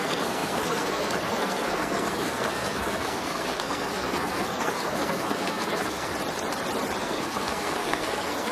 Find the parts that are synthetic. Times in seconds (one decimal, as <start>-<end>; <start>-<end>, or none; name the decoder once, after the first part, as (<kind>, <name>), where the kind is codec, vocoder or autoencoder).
0.0-6.1 (codec, SNAC); 7.0-8.5